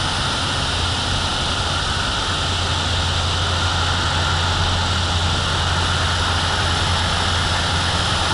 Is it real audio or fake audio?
real